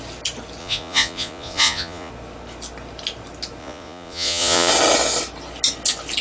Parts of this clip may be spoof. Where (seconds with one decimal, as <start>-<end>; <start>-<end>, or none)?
0.6-2.1; 3.6-4.7